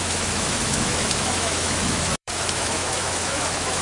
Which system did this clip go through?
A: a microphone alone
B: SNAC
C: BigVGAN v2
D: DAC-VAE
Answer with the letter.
D